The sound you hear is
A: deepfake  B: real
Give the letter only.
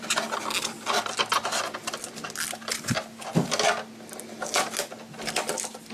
B